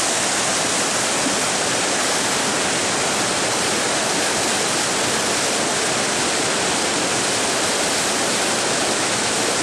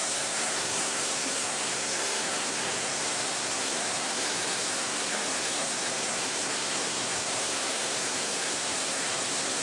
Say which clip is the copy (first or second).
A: second